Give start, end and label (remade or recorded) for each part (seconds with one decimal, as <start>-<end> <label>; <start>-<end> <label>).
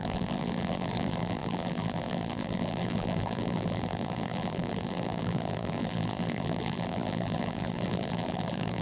0.0-8.8 remade